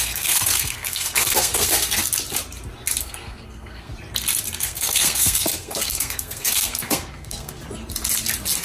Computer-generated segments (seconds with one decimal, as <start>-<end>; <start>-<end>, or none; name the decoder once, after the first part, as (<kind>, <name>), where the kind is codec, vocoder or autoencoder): 0.0-2.0 (codec, SNAC); 3.0-3.9; 4.6-7.6